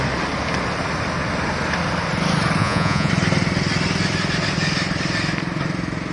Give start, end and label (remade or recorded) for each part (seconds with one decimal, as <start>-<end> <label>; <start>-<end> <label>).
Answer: 0.0-2.6 recorded; 2.6-3.1 remade; 3.1-6.1 recorded